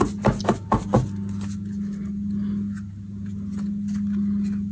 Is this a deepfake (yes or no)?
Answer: no